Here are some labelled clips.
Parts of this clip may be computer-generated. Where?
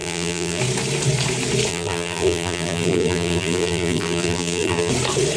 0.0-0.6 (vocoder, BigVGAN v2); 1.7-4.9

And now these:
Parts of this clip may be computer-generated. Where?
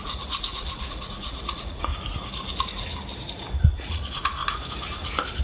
0.0-1.9 (vocoder, Vocos); 3.6-4.4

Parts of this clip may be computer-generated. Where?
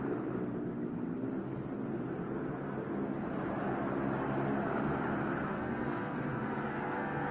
5.5-7.3 (codec, SNAC)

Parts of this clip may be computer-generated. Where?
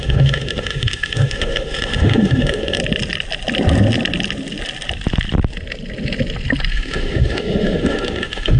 0.0-2.8 (autoencoder, DAC-VAE); 6.7-8.6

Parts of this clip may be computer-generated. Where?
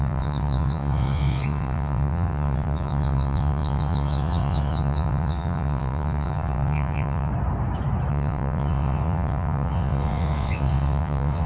0.0-7.3 (vocoder, WaveNeXt); 8.1-11.5